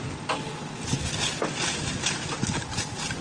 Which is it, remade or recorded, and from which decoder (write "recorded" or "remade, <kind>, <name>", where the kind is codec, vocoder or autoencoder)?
recorded